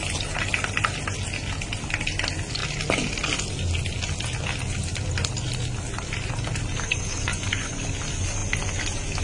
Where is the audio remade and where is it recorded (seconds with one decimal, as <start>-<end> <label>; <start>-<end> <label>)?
0.0-7.3 recorded; 7.3-7.8 remade; 7.8-9.2 recorded